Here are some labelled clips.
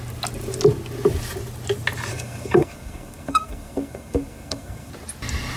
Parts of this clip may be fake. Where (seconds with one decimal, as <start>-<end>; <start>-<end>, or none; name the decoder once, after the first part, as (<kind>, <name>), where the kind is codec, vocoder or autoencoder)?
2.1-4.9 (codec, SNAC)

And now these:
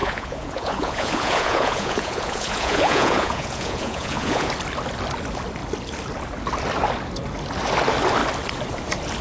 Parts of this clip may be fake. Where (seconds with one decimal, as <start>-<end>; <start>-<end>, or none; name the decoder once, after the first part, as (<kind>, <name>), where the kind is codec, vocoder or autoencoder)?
0.0-4.5 (vocoder, Vocos)

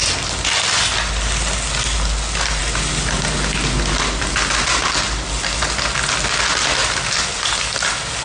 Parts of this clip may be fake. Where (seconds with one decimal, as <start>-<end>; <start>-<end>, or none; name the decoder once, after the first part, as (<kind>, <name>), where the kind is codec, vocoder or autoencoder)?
none

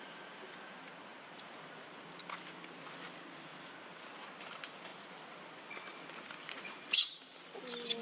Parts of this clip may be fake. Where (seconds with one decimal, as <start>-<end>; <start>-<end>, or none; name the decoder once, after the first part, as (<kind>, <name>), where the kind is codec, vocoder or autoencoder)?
4.9-5.6 (vocoder, Vocos); 6.4-7.3